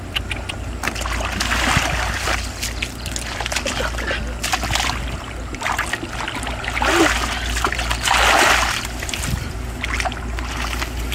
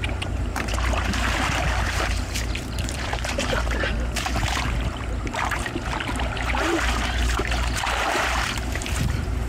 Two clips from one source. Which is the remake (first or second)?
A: second